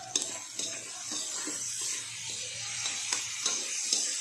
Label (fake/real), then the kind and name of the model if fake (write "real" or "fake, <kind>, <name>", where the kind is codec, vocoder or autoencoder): real